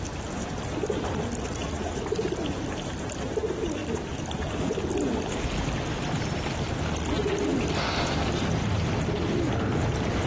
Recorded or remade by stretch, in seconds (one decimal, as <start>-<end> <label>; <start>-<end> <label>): 0.0-10.3 recorded